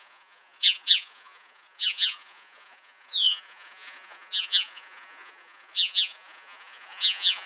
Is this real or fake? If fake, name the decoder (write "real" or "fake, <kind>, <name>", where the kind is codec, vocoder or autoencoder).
fake, vocoder, Vocos